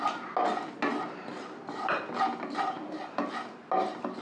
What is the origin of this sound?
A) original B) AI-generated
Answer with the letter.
A